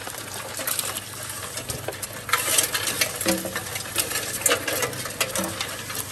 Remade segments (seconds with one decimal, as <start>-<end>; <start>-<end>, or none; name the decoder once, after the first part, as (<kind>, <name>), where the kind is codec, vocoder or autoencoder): none